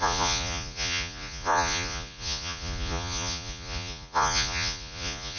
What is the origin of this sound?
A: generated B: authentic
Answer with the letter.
A